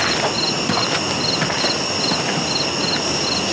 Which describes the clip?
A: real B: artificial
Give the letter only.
A